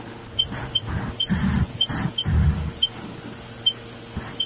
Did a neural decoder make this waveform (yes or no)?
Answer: no